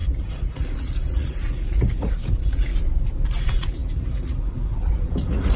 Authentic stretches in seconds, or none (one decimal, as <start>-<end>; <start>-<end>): 2.7-3.4